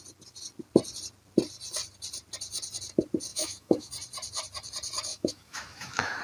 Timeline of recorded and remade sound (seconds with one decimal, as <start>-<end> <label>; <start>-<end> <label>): 0.0-3.3 recorded; 3.3-3.9 remade; 3.9-5.1 recorded; 5.1-6.2 remade